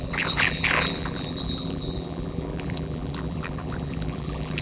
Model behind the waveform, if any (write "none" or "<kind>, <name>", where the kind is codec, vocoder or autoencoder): vocoder, BigVGAN v2